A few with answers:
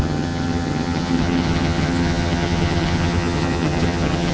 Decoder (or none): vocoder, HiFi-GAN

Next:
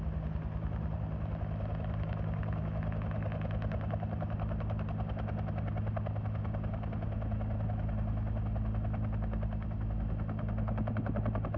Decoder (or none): none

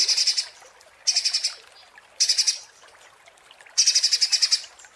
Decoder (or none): none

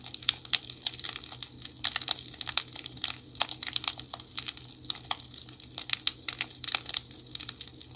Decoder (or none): none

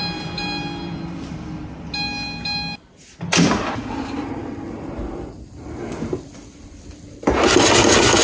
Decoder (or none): none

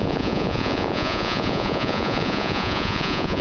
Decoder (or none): vocoder, Vocos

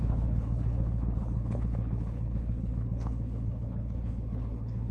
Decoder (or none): codec, HILCodec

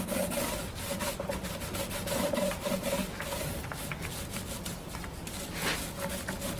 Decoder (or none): none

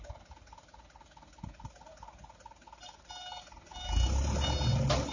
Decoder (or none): none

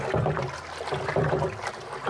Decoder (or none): none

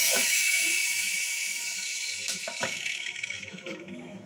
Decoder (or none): autoencoder, DAC-VAE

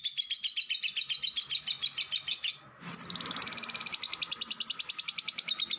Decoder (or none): none